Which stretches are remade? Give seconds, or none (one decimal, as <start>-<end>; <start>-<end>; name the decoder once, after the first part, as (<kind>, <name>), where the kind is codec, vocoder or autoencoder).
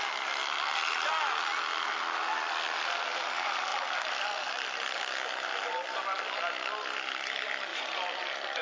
7.7-8.6 (vocoder, BigVGAN v2)